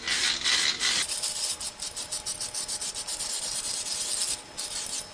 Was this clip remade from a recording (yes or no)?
no